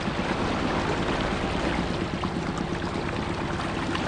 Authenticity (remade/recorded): recorded